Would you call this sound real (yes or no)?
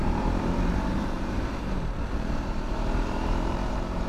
no